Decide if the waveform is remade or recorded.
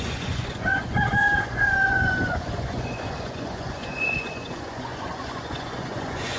remade